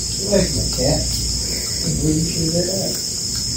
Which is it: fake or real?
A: real